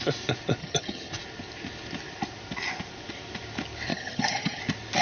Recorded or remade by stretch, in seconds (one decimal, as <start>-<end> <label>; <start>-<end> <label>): 0.0-0.6 recorded; 0.6-1.1 remade; 1.1-3.9 recorded; 3.9-4.6 remade; 4.6-5.0 recorded